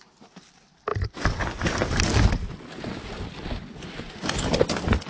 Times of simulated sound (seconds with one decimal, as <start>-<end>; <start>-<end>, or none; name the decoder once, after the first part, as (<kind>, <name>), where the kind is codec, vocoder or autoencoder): none